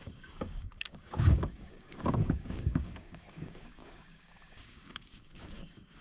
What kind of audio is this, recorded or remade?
remade